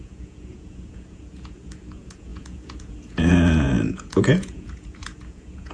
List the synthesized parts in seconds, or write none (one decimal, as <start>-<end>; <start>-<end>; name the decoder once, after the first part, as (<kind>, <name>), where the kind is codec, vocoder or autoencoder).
0.0-5.7 (vocoder, Vocos)